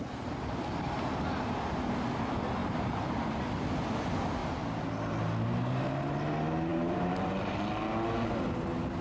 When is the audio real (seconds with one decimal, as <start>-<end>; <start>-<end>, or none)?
0.0-2.6; 3.5-4.4; 5.2-6.7; 7.6-9.0

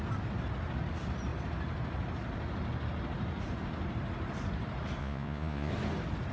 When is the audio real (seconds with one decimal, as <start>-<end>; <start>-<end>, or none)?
0.0-5.0; 5.7-6.3

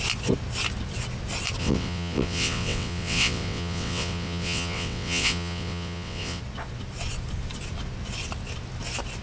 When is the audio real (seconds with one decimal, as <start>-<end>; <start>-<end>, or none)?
0.0-1.6; 6.4-9.2

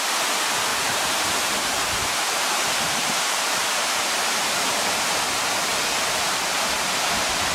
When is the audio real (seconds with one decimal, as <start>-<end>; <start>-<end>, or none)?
0.0-0.7; 5.2-7.5

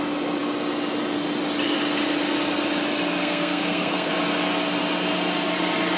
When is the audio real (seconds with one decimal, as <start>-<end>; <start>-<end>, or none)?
0.0-3.2; 4.1-6.0

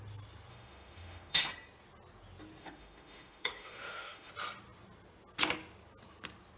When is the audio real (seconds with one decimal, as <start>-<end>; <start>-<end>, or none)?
0.0-0.5; 1.5-2.6; 4.3-6.6